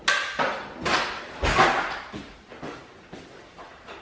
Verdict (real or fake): real